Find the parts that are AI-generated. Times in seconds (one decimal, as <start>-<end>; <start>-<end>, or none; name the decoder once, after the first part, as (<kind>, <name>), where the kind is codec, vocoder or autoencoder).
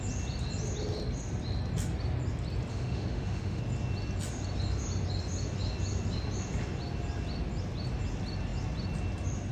2.7-3.6 (autoencoder, DAC-VAE)